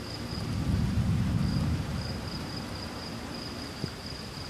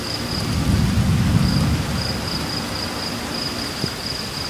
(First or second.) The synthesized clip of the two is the first